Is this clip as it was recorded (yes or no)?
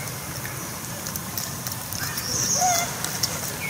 yes